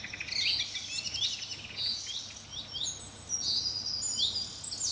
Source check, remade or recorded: recorded